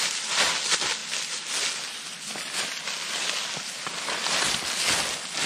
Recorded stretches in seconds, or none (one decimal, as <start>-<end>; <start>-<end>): 0.0-5.5